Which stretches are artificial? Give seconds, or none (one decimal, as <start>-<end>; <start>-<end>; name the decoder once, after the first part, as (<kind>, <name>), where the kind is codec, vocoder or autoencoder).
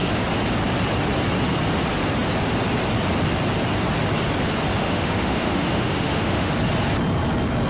4.8-6.5 (autoencoder, DAC-VAE)